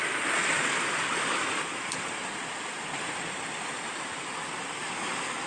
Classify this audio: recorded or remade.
recorded